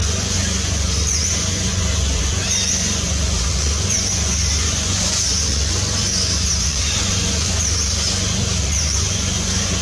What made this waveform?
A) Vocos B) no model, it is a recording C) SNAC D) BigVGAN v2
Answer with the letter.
A